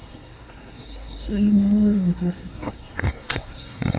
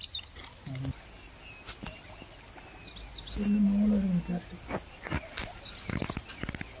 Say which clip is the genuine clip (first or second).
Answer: second